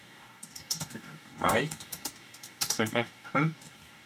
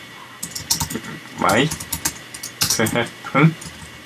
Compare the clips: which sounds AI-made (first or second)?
first